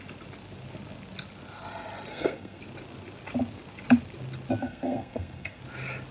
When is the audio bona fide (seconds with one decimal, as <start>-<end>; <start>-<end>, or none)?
0.0-2.1; 2.6-4.6; 5.6-6.1